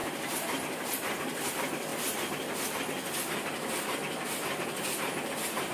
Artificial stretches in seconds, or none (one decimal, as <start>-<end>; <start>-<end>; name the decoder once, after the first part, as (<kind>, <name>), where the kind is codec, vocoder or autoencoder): none